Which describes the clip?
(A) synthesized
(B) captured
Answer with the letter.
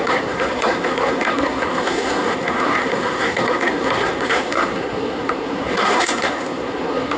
A